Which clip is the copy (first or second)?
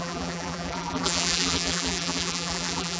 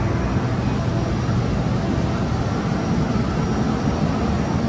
first